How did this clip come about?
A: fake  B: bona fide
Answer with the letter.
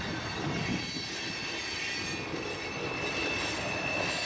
B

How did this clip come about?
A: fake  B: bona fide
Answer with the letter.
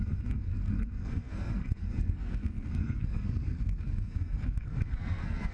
A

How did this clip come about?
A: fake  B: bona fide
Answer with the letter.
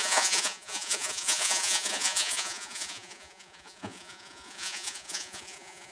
A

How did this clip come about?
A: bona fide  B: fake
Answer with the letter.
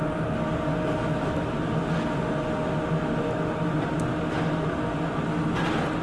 A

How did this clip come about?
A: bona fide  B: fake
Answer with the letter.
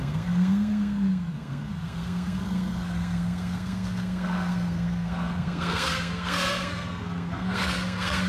B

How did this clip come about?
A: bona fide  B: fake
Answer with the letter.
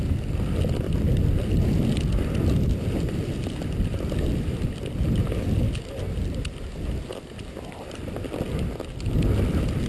A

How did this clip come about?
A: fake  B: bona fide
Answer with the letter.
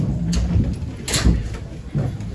B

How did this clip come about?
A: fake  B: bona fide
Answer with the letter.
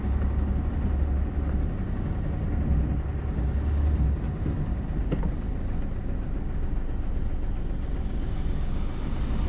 B